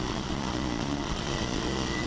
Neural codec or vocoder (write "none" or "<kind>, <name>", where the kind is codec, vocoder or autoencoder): vocoder, Vocos